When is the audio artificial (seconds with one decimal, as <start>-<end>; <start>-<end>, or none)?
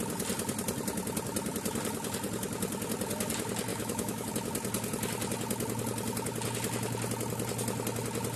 3.7-4.3